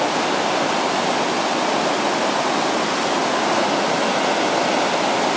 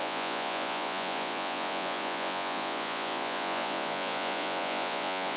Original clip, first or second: first